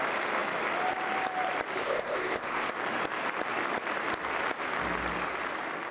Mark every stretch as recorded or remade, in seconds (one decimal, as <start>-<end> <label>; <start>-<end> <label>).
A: 0.0-1.8 recorded; 1.8-2.7 remade; 2.7-5.9 recorded